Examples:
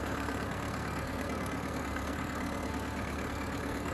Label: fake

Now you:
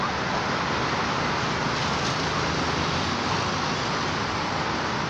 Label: real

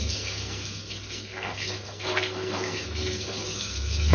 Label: fake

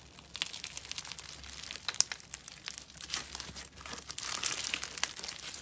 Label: real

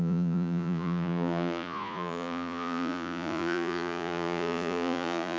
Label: fake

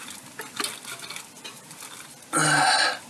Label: real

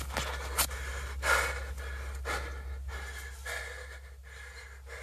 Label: real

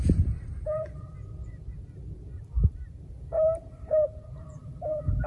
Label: fake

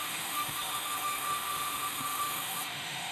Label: fake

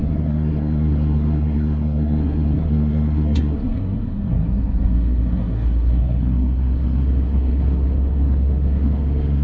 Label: fake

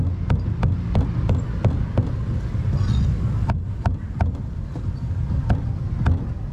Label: real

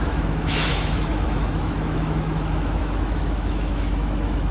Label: fake